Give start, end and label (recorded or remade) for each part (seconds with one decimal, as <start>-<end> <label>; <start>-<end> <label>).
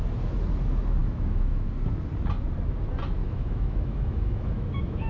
0.0-1.0 recorded; 1.0-1.7 remade; 1.7-3.2 recorded; 3.2-5.1 remade